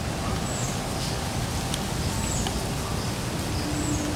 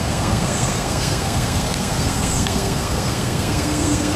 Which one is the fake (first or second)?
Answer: second